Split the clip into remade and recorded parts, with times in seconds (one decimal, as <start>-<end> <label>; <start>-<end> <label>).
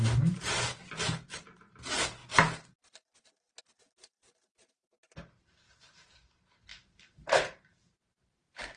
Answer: 0.0-0.8 remade; 0.8-1.3 recorded; 1.3-2.2 remade; 2.2-3.6 recorded; 3.6-8.8 remade